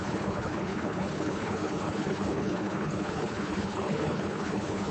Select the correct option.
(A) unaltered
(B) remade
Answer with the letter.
B